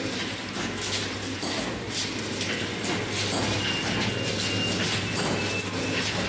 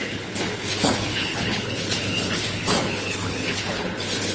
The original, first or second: first